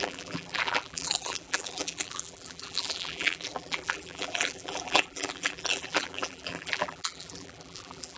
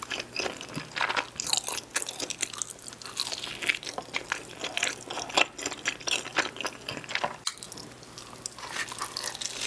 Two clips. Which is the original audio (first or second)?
second